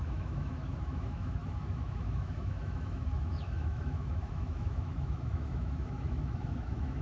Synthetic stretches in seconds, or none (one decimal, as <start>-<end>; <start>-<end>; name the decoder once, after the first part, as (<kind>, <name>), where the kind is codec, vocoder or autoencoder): 0.0-7.0 (autoencoder, DAC-VAE)